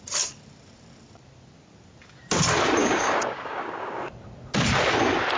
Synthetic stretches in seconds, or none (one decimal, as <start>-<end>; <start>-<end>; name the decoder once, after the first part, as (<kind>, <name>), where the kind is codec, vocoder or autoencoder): 2.8-4.1 (codec, DAC)